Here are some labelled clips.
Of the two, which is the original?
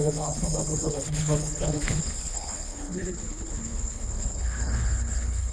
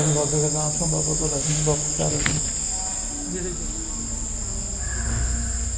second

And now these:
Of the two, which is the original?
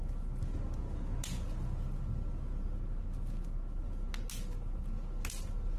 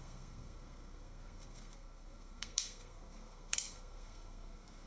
first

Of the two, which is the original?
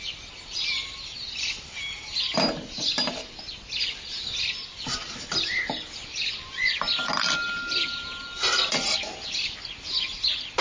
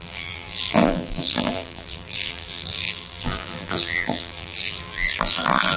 first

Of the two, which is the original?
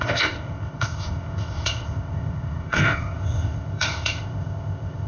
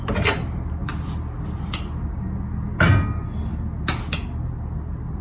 second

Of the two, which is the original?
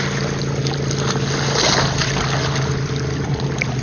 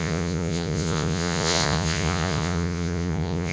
first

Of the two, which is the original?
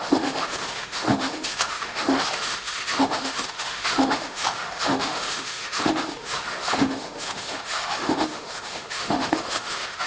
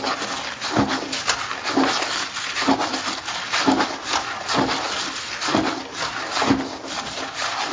second